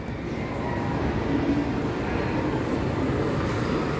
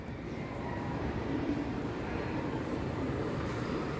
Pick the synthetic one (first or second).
second